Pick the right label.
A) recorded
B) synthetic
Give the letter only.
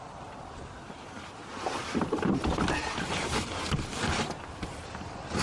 A